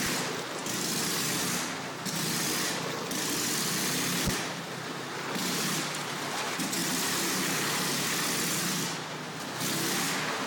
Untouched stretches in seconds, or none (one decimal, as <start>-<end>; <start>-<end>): 0.0-10.5